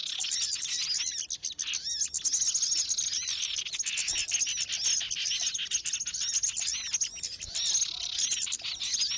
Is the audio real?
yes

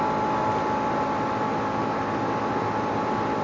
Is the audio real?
yes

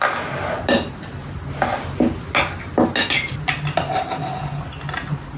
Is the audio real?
yes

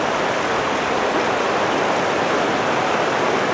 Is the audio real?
no